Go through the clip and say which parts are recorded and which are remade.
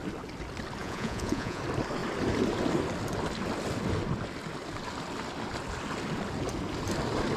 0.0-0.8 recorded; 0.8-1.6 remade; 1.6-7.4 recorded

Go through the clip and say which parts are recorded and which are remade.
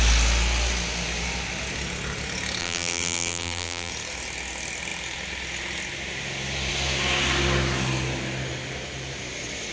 0.0-2.6 recorded; 2.6-3.9 remade; 3.9-9.7 recorded